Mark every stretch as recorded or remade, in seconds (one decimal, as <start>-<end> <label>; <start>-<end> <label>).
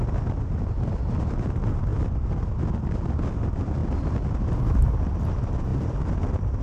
0.0-1.9 recorded; 1.9-2.5 remade; 2.5-5.7 recorded; 5.7-6.6 remade